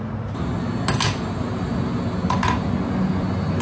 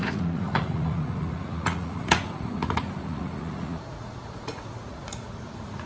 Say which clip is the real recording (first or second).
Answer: first